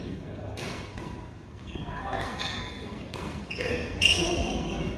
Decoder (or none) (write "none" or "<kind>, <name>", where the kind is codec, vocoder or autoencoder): codec, SNAC